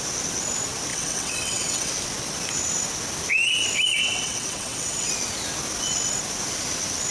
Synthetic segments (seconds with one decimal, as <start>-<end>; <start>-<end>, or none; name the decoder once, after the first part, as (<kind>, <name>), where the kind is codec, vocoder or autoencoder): 0.9-1.9 (vocoder, WaveNeXt); 4.0-5.1